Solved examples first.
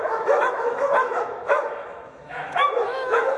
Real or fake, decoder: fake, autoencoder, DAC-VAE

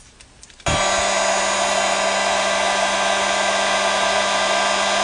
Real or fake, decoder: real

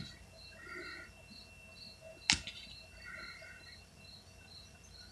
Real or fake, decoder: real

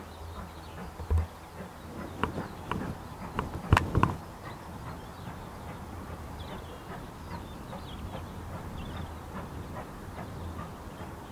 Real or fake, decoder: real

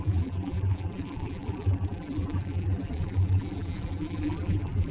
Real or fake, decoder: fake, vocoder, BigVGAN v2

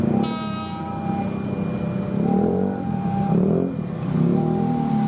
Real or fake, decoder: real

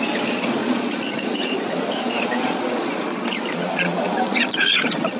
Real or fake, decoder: fake, vocoder, Vocos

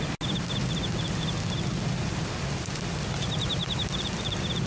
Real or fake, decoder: real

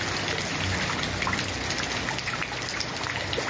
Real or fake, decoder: fake, vocoder, BigVGAN v2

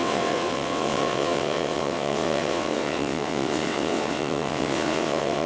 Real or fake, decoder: fake, vocoder, WaveNeXt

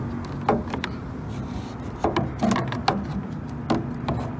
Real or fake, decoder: real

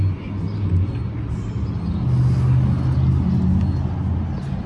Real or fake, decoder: real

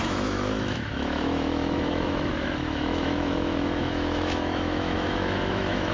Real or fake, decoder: fake, autoencoder, DAC-VAE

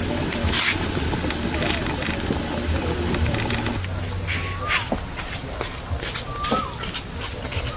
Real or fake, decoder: real